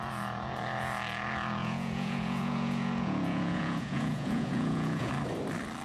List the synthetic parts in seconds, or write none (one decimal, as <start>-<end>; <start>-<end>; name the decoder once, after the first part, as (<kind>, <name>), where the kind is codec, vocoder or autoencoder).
1.6-5.1 (vocoder, Vocos)